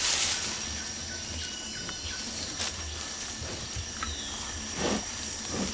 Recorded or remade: recorded